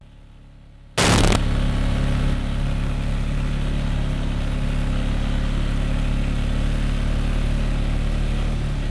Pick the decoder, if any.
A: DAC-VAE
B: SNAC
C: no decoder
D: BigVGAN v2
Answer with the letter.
C